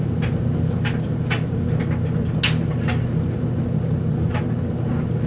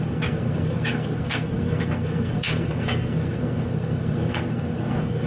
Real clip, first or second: first